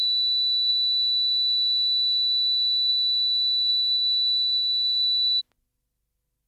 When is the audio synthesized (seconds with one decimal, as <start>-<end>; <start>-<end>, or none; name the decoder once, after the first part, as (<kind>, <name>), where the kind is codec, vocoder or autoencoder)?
3.7-5.4 (codec, DAC)